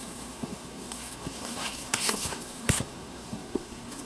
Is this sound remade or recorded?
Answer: remade